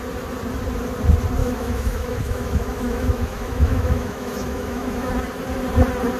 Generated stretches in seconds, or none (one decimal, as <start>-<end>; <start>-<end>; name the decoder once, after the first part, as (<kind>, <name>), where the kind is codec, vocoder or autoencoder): 1.4-5.1 (autoencoder, DAC-VAE)

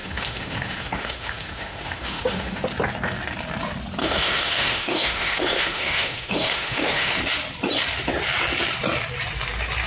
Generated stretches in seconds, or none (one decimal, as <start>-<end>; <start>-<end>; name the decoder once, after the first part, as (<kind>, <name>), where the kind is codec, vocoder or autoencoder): 0.0-2.6 (autoencoder, DAC-VAE); 4.0-7.2

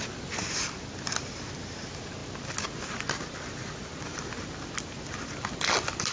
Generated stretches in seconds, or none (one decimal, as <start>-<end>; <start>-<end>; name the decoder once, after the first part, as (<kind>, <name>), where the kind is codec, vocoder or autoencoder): none

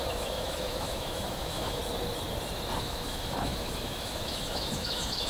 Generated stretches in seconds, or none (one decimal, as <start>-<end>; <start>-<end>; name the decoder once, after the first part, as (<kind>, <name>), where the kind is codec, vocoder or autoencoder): 0.0-1.8 (autoencoder, DAC-VAE); 2.8-5.3

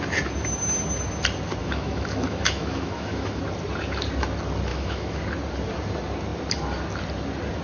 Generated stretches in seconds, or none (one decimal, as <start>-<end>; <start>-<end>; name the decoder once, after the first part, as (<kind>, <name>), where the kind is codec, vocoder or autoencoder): 1.6-3.4 (autoencoder, DAC-VAE); 4.7-5.2

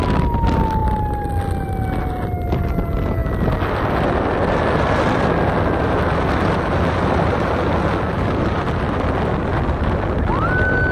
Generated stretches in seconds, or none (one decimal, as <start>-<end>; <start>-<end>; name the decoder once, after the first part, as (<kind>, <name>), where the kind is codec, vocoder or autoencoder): none